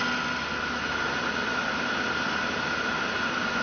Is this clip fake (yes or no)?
no